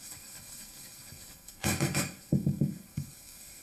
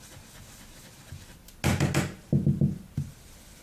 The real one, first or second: second